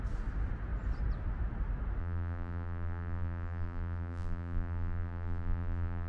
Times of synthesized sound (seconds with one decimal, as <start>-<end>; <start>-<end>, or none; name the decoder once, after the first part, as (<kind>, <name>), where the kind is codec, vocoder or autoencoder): 2.0-6.1 (vocoder, BigVGAN v2)